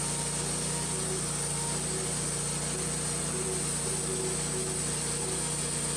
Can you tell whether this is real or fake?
real